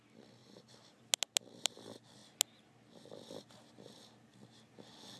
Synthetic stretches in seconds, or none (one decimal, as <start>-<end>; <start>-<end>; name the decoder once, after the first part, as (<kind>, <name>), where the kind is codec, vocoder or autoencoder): none